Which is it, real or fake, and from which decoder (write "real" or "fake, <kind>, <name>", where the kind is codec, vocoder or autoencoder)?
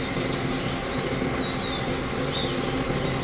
real